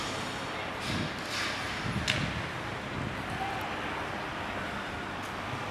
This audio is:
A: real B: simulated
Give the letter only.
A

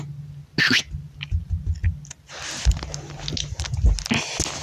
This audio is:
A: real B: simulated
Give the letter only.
A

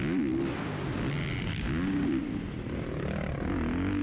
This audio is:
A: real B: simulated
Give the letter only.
A